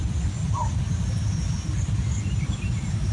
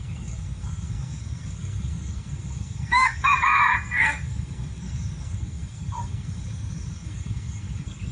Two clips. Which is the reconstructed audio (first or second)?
second